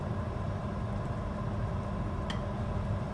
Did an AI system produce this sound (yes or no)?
no